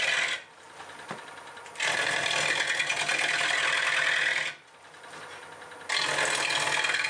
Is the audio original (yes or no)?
yes